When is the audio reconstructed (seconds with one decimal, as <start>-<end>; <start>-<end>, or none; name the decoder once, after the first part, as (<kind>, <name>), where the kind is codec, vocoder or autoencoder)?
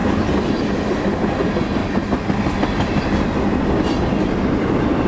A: none